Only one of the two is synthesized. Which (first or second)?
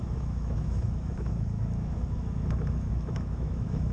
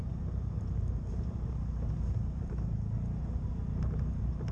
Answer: first